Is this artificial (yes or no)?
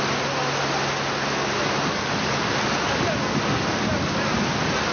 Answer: no